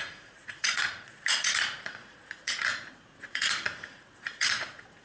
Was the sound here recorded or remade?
remade